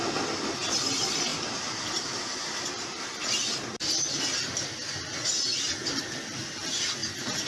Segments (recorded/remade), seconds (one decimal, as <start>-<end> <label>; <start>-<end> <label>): 0.0-1.3 recorded; 1.3-3.8 remade; 3.8-7.0 recorded; 7.0-7.5 remade